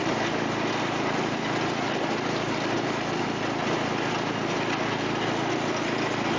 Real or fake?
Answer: real